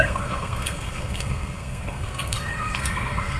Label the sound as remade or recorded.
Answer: remade